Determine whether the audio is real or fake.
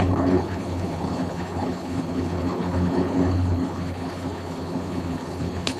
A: fake